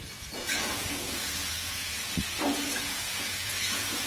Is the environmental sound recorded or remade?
remade